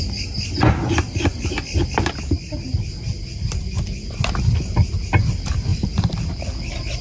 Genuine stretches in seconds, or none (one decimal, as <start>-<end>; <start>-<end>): 0.0-7.0